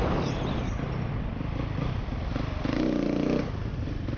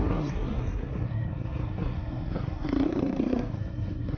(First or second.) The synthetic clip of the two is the second